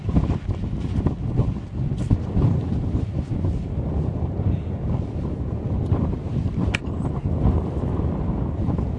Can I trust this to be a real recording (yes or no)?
no